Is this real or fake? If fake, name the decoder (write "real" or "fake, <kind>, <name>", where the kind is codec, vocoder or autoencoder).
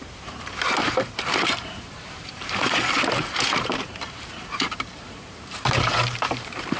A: fake, vocoder, BigVGAN v2